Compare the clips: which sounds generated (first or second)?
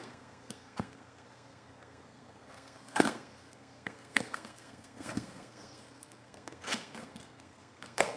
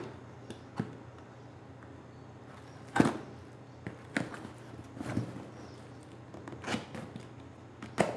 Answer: first